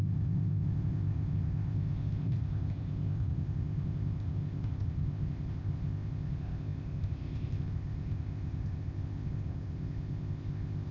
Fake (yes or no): yes